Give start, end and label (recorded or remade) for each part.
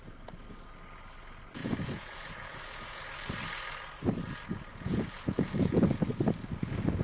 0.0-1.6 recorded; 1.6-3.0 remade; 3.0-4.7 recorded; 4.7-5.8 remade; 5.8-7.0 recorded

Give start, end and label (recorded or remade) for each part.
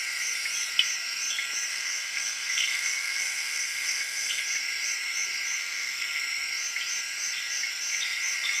0.0-1.7 recorded; 1.7-4.4 remade; 4.4-5.6 recorded; 5.6-6.2 remade; 6.2-8.6 recorded